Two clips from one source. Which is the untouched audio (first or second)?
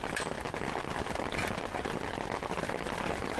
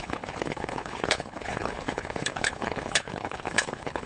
first